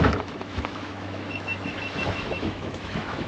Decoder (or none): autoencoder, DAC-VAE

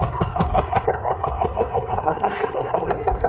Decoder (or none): codec, SNAC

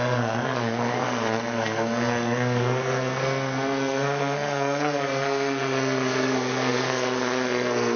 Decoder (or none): codec, SNAC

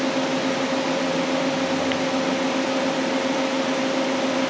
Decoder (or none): none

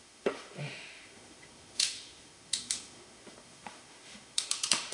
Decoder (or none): autoencoder, DAC-VAE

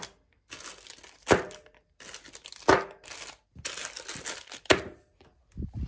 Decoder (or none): none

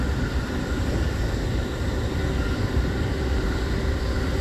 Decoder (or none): none